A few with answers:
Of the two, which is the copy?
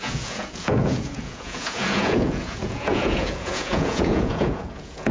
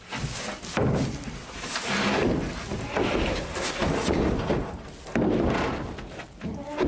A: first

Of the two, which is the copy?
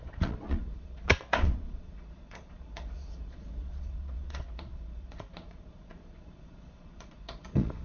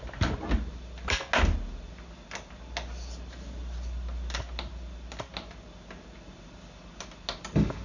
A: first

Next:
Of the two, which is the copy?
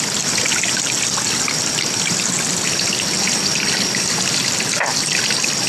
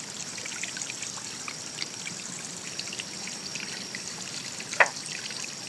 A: second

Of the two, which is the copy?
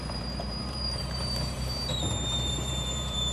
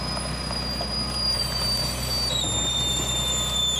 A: first